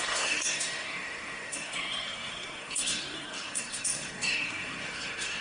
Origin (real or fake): fake